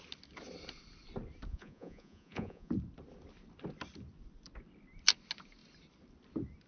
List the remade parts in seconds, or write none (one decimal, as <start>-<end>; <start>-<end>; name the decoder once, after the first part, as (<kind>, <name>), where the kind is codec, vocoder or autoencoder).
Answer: 1.5-2.7 (vocoder, Vocos)